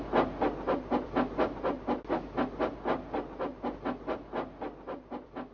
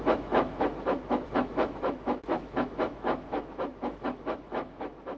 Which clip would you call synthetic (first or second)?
second